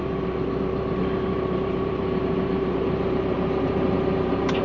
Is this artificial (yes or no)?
yes